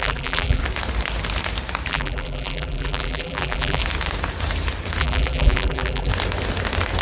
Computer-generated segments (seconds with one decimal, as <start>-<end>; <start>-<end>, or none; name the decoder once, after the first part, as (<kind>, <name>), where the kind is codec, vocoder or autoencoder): 0.0-0.6 (vocoder, BigVGAN v2); 1.9-3.8; 5.0-6.1